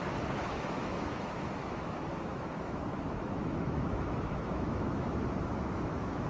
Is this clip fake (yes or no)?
yes